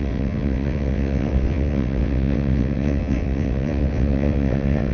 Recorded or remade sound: remade